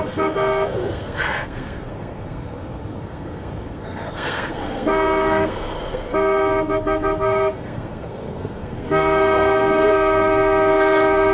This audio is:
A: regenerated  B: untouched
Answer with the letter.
A